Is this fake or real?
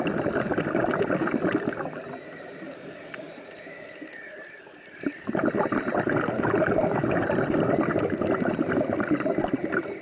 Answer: real